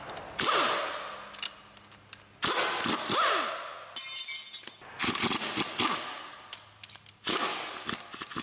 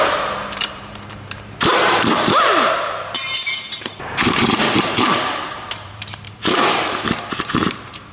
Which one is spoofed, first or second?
second